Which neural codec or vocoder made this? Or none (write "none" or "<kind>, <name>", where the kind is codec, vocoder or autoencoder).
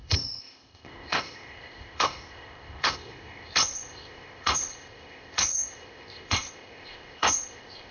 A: codec, ZipCodec